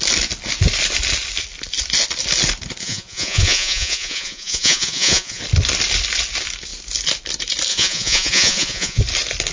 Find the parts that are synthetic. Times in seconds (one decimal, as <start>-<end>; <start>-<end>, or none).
2.8-5.4; 7.7-9.0